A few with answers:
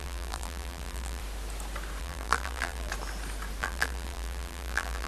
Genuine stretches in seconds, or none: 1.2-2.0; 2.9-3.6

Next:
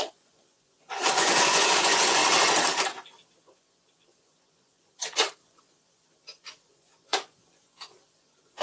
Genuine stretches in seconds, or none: 2.2-3.4

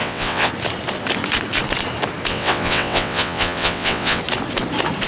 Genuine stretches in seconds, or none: 0.5-2.3; 4.2-5.1

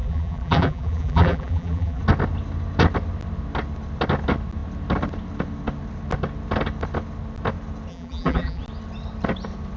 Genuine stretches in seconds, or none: 2.0-7.9; 8.6-9.8